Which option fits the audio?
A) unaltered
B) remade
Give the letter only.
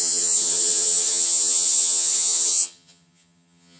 B